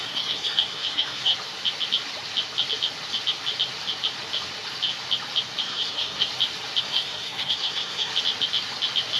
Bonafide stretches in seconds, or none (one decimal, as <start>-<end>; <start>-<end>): 1.3-5.6; 6.3-6.8; 8.1-9.2